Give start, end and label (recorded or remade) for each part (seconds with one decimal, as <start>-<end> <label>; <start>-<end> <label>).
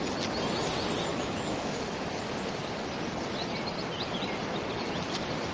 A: 0.0-1.1 recorded; 1.1-1.8 remade; 1.8-5.5 recorded